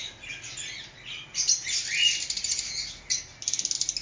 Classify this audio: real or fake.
real